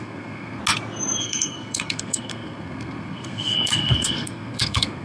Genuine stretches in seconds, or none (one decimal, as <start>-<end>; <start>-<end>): 0.6-1.2